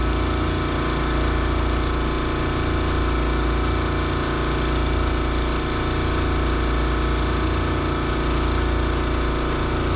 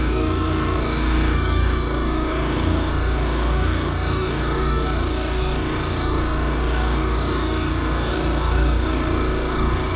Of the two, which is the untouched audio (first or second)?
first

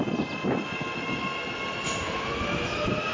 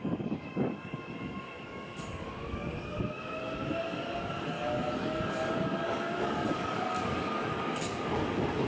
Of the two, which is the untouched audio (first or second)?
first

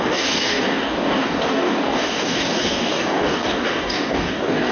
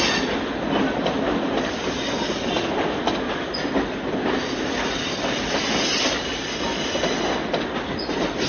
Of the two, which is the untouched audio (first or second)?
second